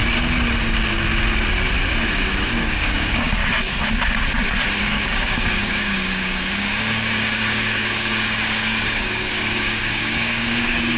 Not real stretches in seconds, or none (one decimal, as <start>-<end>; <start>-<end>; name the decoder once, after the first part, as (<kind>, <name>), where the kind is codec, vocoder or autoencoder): 2.5-3.4 (codec, DAC); 4.8-11.0